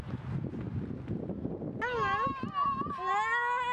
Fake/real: real